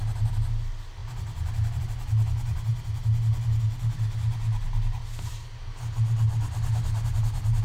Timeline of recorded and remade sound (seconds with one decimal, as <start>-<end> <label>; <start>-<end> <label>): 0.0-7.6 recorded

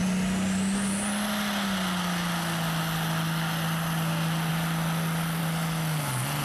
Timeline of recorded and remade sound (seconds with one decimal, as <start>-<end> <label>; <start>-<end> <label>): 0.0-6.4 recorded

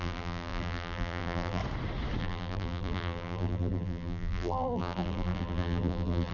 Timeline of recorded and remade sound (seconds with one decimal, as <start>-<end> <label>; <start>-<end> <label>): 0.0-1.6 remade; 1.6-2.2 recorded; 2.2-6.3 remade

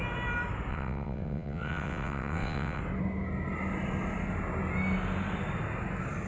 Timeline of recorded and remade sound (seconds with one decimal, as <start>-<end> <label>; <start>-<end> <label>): 0.0-0.7 recorded; 0.7-2.8 remade; 2.8-6.3 recorded

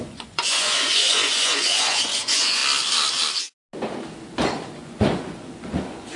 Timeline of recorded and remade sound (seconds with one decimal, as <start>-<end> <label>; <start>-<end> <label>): 0.0-2.6 remade; 2.6-4.4 recorded; 4.4-6.2 remade

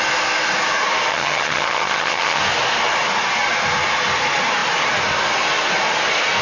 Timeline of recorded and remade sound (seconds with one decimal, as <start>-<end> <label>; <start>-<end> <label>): 0.0-1.1 recorded; 1.1-2.4 remade; 2.4-6.4 recorded

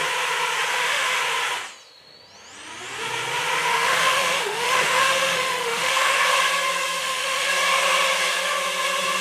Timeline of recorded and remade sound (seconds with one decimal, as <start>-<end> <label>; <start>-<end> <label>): 0.0-0.7 recorded; 0.7-1.2 remade; 1.2-3.7 recorded; 3.7-6.2 remade; 6.2-7.0 recorded; 7.0-7.5 remade; 7.5-9.2 recorded

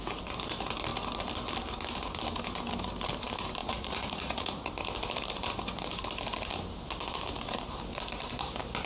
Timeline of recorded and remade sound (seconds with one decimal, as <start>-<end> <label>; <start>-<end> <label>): 0.0-3.6 recorded; 3.6-4.7 remade; 4.7-8.8 recorded